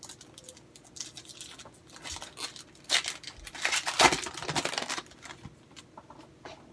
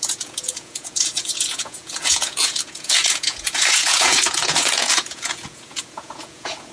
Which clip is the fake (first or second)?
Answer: second